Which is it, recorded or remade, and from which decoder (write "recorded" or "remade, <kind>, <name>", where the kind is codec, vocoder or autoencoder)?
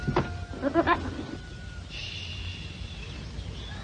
recorded